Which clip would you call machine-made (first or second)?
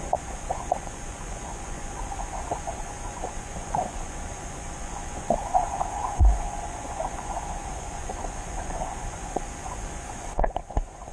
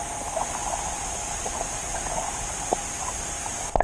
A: first